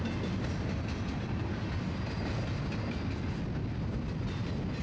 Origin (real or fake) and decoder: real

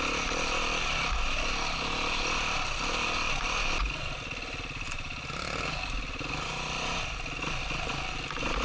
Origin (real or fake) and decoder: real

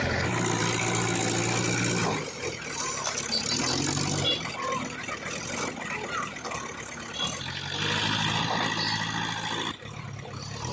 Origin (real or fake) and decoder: real